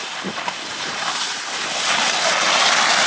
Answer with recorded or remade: recorded